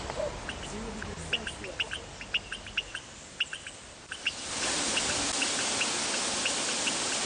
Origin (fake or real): real